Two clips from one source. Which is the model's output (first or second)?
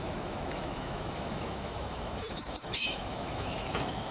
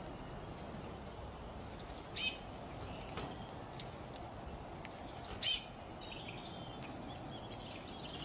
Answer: first